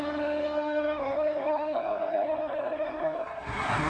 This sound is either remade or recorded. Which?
remade